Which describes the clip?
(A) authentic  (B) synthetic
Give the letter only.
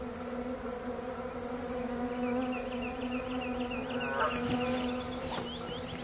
A